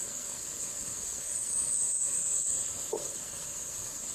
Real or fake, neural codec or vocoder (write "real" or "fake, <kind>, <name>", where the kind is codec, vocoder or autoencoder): fake, codec, SNAC